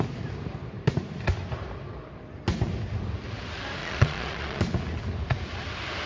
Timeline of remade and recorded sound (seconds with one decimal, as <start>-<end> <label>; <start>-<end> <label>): 0.0-3.8 recorded; 3.8-4.6 remade; 4.6-6.1 recorded